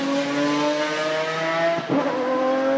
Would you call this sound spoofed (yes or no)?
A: no